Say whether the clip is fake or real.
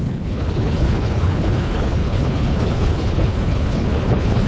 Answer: fake